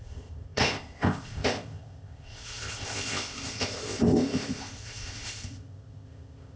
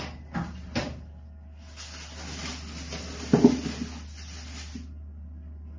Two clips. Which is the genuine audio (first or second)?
second